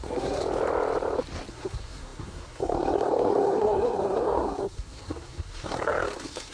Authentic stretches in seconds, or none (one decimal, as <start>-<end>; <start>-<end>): 0.4-1.5